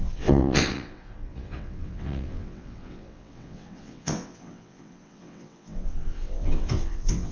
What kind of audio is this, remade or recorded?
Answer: remade